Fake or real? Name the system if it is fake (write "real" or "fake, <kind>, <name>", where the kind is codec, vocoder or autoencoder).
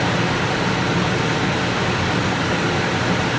real